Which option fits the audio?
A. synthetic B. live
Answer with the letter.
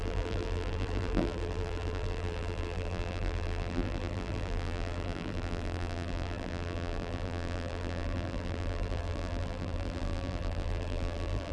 A